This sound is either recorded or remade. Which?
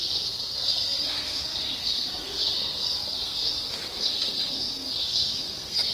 remade